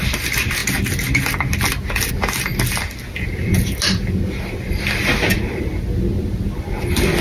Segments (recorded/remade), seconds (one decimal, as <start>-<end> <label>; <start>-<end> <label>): 0.0-7.2 recorded

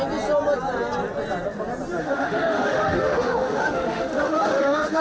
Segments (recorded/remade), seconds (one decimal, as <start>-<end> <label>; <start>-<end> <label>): 0.0-2.0 recorded; 2.0-5.0 remade

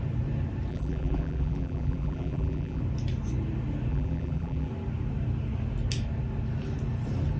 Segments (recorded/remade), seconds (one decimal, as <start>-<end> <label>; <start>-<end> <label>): 0.0-0.7 recorded; 0.7-2.8 remade; 2.8-3.9 recorded; 3.9-4.7 remade; 4.7-7.4 recorded

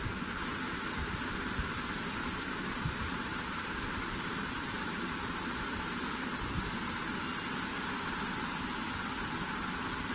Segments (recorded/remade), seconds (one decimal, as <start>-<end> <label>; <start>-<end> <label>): 0.0-3.3 recorded; 3.3-6.1 remade; 6.1-10.1 recorded

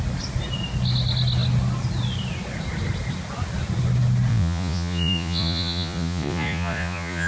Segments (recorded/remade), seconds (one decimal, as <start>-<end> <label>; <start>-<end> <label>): 0.0-4.3 recorded; 4.3-7.3 remade

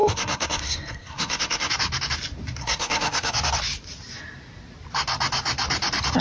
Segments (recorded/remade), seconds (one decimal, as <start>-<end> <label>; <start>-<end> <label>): 0.0-1.7 remade; 1.7-2.6 recorded; 2.6-3.3 remade; 3.3-6.2 recorded

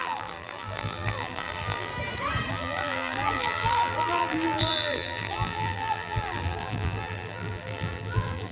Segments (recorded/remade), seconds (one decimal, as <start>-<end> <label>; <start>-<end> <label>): 0.0-1.9 remade; 1.9-2.5 recorded; 2.5-8.5 remade

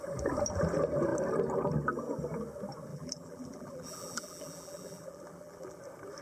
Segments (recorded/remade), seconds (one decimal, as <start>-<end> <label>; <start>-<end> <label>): 0.0-2.9 recorded; 2.9-5.8 remade; 5.8-6.2 recorded